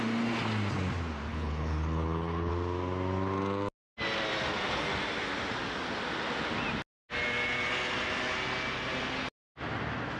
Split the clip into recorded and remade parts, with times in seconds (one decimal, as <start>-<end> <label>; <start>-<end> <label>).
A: 0.0-1.3 recorded; 1.3-2.5 remade; 2.5-10.2 recorded